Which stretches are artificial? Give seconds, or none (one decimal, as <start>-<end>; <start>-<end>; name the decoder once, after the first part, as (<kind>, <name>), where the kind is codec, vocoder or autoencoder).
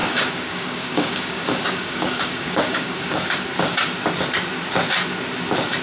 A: 0.0-3.4 (codec, DAC)